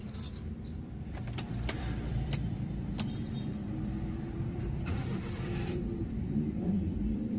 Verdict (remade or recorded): remade